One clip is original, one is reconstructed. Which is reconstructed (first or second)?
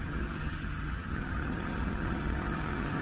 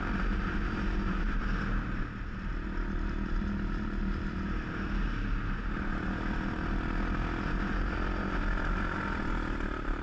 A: first